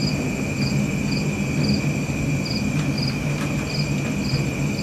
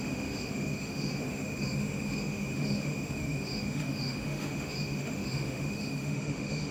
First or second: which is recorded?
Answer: first